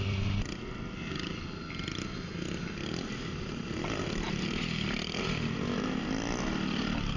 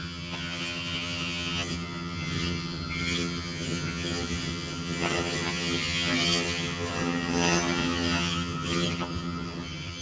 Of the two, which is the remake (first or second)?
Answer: second